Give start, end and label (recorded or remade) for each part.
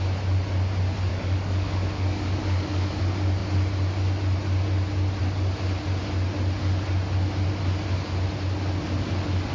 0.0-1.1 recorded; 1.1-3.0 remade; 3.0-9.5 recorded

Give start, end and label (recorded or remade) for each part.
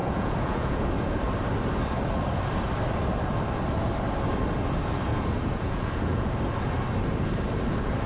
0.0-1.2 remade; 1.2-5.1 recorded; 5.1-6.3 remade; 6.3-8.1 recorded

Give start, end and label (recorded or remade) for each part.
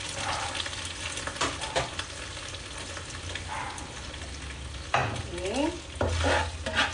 0.0-6.9 recorded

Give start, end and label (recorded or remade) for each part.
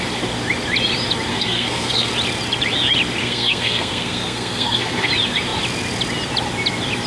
0.0-1.3 recorded; 1.3-2.1 remade; 2.1-3.2 recorded; 3.2-5.1 remade; 5.1-7.1 recorded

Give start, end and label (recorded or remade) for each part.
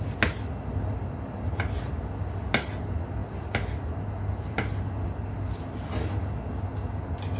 0.0-7.4 recorded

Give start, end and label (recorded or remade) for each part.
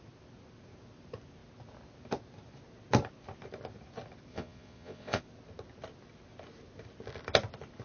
0.0-4.3 recorded; 4.3-5.2 remade; 5.2-7.8 recorded